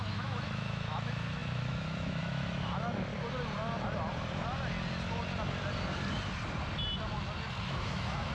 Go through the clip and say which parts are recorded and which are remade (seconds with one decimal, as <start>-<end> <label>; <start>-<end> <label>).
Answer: 0.0-3.1 remade; 3.1-7.6 recorded; 7.6-8.3 remade